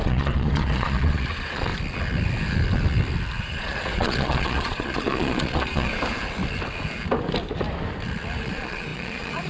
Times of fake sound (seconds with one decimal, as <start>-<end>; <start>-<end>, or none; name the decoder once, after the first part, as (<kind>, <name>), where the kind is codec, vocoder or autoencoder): 0.0-1.7 (vocoder, Vocos); 3.4-5.9; 8.4-9.5